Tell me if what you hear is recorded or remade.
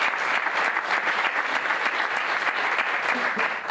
recorded